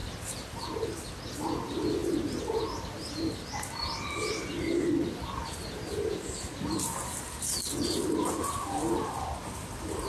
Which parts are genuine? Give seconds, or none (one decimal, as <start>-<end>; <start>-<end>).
0.0-10.1